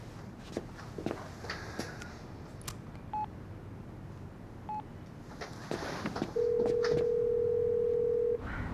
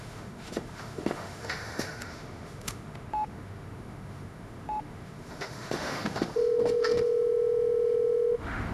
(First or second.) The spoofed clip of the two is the second